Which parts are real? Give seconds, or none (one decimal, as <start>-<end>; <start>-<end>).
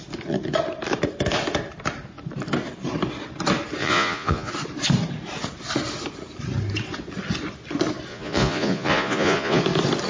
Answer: 0.0-3.8; 4.5-8.1; 9.6-10.1